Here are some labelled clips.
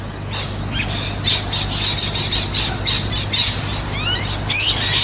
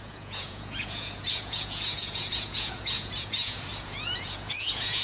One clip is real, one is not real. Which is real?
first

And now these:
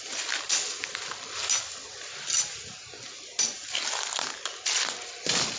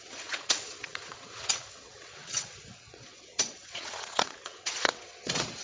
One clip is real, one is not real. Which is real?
first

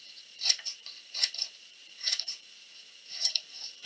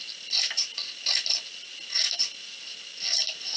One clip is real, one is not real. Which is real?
second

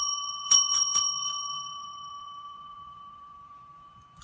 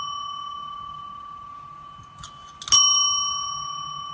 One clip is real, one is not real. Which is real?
second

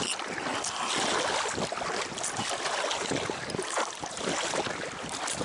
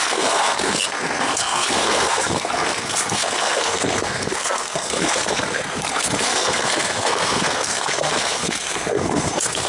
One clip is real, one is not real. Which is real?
first